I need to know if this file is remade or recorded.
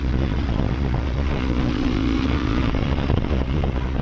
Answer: remade